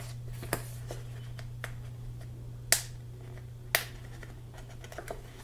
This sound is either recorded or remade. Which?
recorded